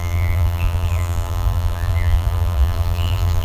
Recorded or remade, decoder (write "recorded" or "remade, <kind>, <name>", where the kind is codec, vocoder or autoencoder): remade, vocoder, BigVGAN v2